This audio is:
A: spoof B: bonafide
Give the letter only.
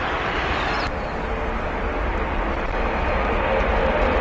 B